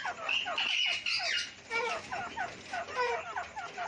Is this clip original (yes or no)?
yes